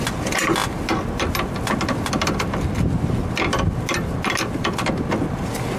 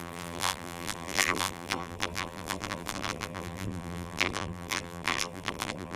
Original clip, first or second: first